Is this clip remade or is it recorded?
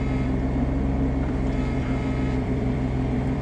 remade